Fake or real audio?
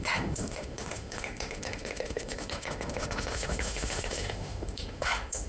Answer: fake